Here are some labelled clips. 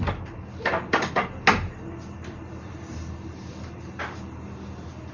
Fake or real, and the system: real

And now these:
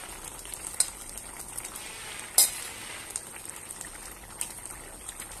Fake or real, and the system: real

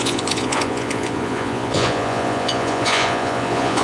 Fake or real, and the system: fake, vocoder, Vocos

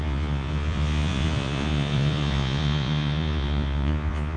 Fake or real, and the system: fake, vocoder, Vocos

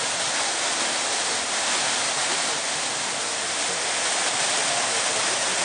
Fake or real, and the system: real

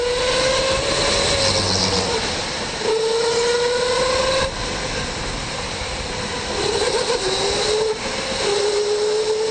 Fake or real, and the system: real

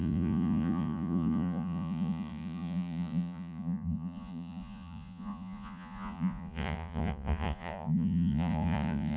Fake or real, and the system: fake, vocoder, Vocos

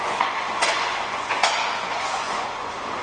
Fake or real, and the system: fake, vocoder, Vocos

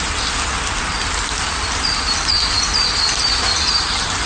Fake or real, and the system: real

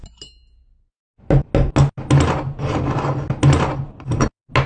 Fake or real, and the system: real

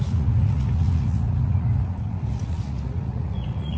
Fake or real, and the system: fake, vocoder, Vocos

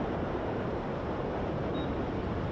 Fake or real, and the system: real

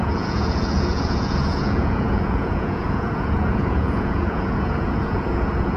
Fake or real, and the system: fake, vocoder, Vocos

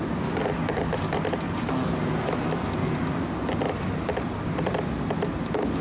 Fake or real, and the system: real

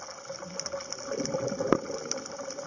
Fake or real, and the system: real